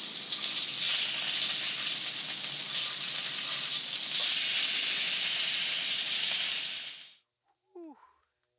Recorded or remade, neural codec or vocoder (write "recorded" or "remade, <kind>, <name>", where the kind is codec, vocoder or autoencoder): recorded